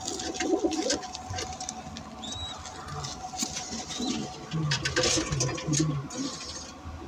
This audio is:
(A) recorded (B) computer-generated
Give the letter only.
A